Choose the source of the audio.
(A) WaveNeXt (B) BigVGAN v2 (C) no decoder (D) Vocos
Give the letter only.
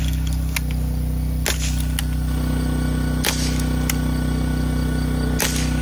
C